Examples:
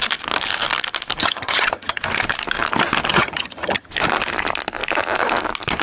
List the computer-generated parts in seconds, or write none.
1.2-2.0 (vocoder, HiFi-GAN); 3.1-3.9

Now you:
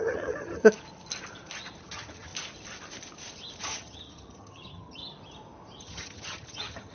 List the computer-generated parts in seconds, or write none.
0.0-0.6 (vocoder, HiFi-GAN); 1.8-2.3; 3.6-5.0; 5.8-6.9

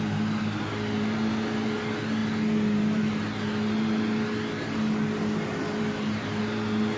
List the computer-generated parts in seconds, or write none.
none